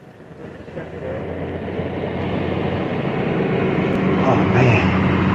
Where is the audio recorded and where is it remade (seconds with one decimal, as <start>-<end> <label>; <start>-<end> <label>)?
0.0-5.3 recorded